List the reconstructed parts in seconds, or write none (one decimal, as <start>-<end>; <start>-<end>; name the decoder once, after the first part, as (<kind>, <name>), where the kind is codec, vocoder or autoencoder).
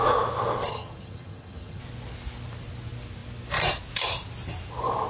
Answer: 0.7-1.8 (vocoder, HiFi-GAN)